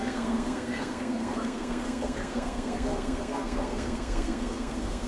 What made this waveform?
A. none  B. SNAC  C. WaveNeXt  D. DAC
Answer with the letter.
B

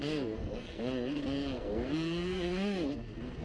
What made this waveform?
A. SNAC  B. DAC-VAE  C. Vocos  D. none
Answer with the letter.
A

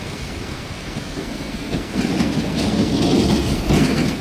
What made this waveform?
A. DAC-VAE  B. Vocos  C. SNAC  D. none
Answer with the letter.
C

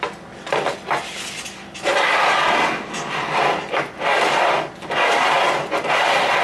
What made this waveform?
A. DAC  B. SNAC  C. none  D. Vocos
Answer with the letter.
C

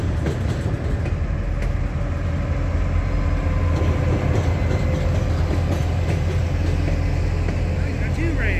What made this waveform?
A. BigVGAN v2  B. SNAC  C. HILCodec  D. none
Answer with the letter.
D